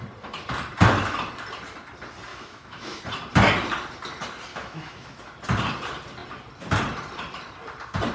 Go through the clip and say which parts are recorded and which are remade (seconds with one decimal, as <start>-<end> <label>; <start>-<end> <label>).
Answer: 0.0-2.3 recorded; 2.3-3.0 remade; 3.0-4.5 recorded; 4.5-5.2 remade; 5.2-8.1 recorded